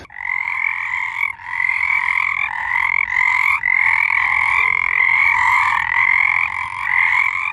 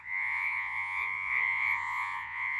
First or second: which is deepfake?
second